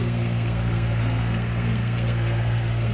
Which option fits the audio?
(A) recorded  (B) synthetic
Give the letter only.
B